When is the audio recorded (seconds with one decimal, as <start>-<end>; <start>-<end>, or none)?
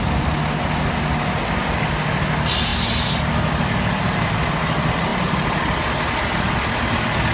0.0-7.3